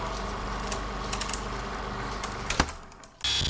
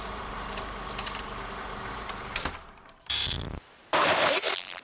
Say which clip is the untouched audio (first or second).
first